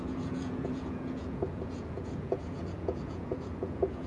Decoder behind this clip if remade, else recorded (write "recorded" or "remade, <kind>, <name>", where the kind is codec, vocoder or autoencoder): remade, vocoder, Vocos